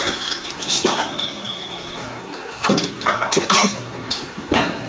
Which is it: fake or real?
fake